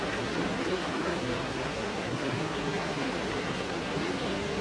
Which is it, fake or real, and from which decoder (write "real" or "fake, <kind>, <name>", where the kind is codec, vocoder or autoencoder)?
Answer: fake, codec, SNAC